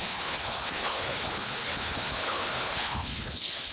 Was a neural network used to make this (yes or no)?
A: yes